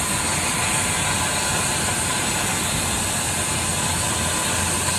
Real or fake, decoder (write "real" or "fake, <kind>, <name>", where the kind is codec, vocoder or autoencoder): real